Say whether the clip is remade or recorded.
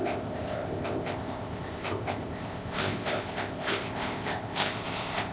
remade